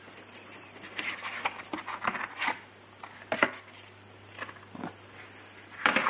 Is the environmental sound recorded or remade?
recorded